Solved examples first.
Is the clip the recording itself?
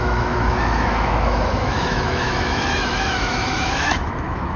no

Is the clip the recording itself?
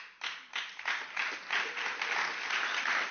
yes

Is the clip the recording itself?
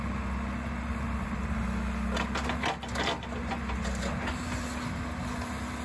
yes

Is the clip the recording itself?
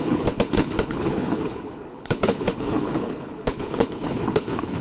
no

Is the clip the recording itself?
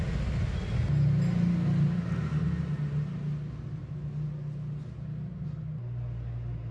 yes